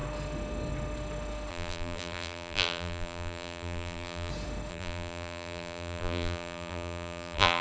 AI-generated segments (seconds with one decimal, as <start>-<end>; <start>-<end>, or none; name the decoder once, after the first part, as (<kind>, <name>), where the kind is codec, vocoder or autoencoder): 1.5-4.3 (vocoder, BigVGAN v2); 4.7-7.6